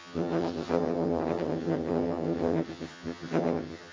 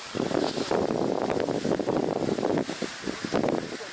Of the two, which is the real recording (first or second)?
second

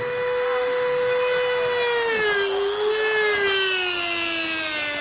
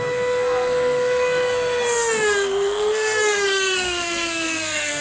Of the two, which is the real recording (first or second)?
first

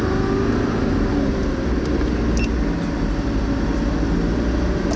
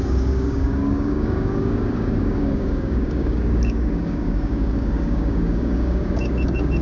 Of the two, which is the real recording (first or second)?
first